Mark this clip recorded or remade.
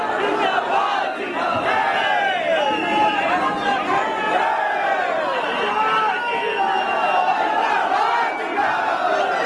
recorded